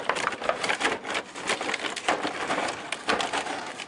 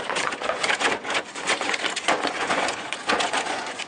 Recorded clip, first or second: first